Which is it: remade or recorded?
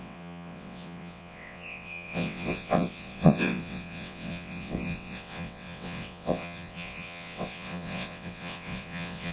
remade